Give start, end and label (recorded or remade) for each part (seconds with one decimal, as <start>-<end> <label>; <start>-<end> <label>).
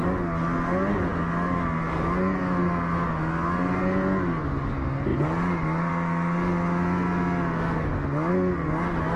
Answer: 0.0-9.2 recorded